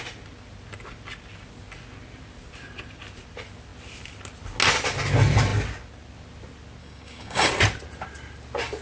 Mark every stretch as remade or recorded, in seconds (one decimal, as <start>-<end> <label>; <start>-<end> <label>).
0.0-6.8 recorded; 6.8-7.5 remade; 7.5-8.8 recorded